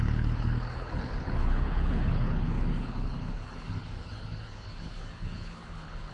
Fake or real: fake